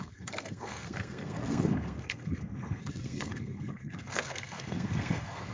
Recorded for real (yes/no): no